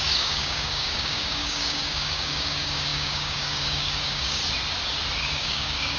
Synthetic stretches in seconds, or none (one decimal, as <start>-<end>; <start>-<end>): 0.0-4.4; 5.2-6.0